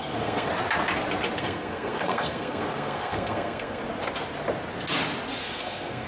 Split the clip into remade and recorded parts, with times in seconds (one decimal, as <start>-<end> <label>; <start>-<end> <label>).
0.0-0.5 remade; 0.5-1.4 recorded; 1.4-3.8 remade; 3.8-5.4 recorded; 5.4-6.1 remade